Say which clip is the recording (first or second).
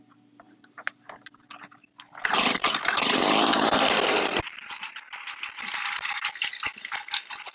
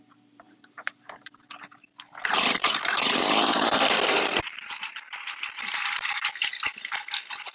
first